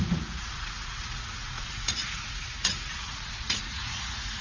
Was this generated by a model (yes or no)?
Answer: yes